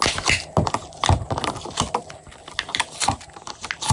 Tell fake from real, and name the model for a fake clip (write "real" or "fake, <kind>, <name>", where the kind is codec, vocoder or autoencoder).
real